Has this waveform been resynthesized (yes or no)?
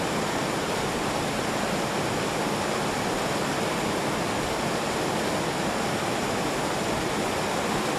no